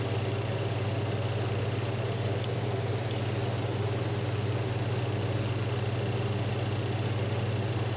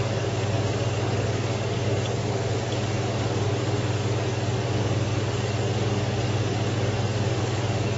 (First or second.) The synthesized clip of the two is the second